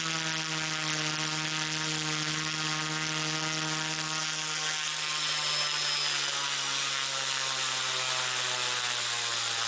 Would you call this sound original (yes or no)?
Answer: yes